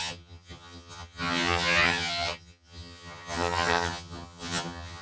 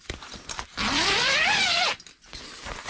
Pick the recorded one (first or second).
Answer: second